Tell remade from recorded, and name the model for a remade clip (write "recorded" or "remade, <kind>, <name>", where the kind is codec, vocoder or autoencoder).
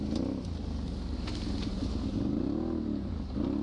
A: recorded